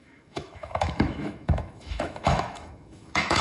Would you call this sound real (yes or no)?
no